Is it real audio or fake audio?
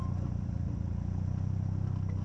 real